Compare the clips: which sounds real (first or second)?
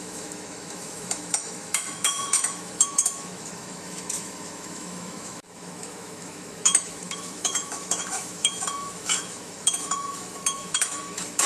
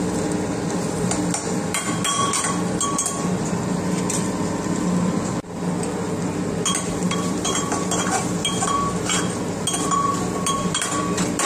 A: second